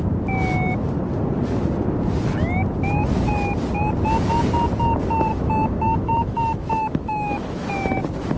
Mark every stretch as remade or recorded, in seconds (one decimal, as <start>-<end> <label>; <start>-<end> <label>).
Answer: 0.0-5.3 recorded; 5.3-8.0 remade; 8.0-8.4 recorded